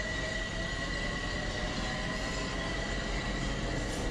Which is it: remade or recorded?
recorded